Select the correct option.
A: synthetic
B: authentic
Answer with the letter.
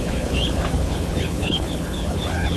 A